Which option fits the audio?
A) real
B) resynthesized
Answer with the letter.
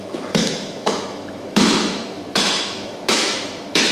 B